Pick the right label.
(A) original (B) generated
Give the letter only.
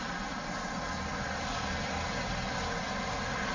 A